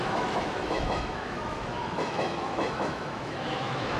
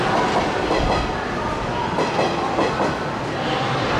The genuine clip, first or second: second